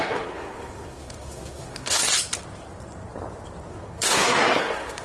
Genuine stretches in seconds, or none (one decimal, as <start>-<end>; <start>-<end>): 2.0-3.7